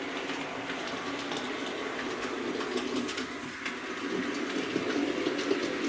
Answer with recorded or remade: recorded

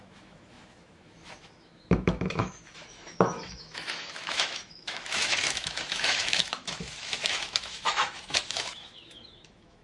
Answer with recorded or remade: remade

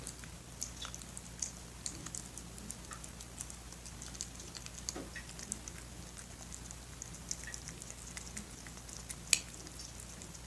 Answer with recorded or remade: recorded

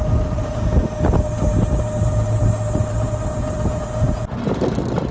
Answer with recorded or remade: recorded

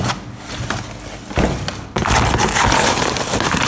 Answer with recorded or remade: recorded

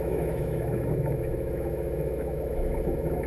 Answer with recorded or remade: remade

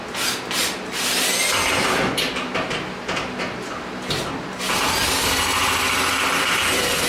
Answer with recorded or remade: recorded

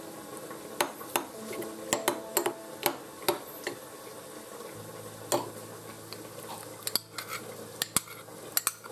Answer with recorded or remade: recorded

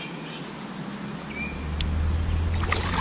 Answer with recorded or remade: recorded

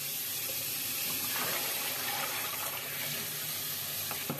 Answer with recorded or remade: recorded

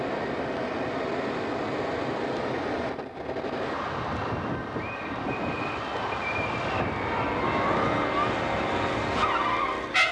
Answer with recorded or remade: recorded